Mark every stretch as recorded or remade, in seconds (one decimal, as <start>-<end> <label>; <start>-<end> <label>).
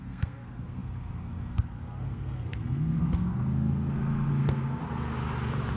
0.0-4.8 remade; 4.8-5.8 recorded